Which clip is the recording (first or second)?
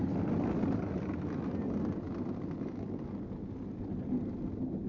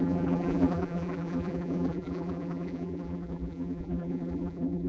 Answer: first